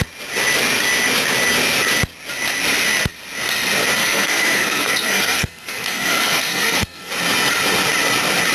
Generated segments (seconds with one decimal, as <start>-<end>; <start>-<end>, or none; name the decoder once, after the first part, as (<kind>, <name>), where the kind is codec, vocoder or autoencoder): 4.0-7.1 (codec, SNAC)